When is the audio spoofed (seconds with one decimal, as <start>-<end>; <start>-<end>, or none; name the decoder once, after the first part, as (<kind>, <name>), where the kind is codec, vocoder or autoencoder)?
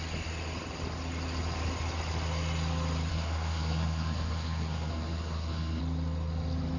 3.1-5.8 (codec, SNAC)